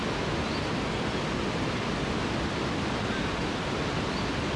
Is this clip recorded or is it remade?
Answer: recorded